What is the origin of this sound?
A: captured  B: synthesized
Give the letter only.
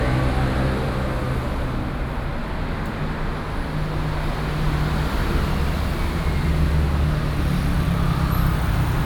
A